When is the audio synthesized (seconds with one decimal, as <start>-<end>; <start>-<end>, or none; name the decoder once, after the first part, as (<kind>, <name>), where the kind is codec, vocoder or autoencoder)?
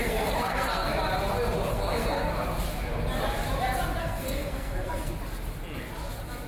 0.0-0.9 (codec, SNAC); 1.7-2.3; 4.0-5.1